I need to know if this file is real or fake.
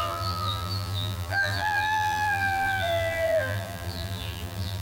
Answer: fake